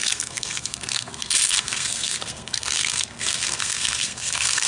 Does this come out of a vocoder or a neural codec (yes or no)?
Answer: yes